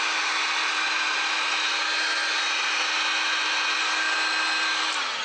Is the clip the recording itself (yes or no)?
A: yes